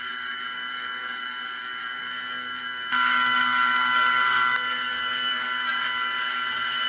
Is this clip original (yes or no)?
no